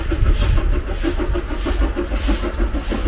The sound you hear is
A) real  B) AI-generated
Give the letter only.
A